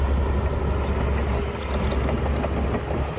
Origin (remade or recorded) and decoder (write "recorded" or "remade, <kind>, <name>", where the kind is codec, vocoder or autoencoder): recorded